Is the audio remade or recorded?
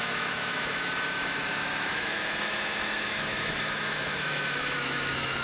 remade